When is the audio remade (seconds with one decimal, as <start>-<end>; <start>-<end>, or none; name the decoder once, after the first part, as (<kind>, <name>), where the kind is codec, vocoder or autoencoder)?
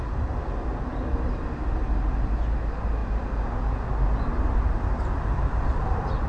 none